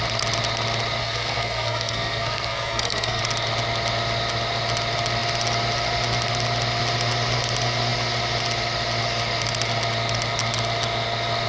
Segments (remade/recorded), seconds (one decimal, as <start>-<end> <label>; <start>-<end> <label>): 0.0-1.0 recorded; 1.0-3.2 remade; 3.2-11.5 recorded